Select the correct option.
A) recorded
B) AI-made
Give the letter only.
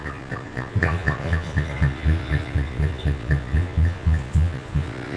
B